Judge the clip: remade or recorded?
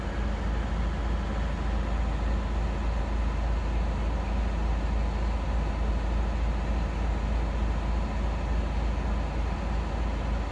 recorded